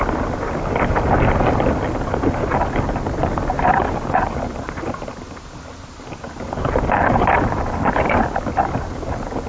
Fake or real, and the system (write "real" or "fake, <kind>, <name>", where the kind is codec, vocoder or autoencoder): real